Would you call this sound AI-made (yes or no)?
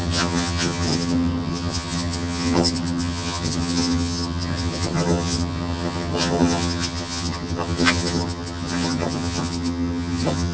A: yes